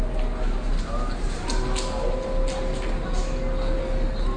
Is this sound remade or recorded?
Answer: recorded